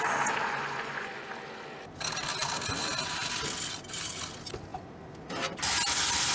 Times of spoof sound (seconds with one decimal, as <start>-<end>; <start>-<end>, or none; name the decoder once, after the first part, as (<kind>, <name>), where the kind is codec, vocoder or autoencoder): 0.4-1.3 (vocoder, Vocos)